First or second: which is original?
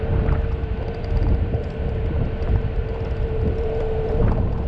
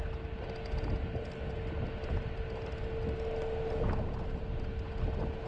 second